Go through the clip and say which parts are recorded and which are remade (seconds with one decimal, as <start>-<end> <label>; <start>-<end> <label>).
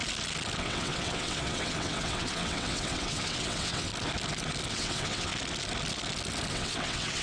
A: 0.0-0.6 recorded; 0.6-3.9 remade; 3.9-4.7 recorded; 4.7-5.3 remade; 5.3-6.5 recorded; 6.5-7.2 remade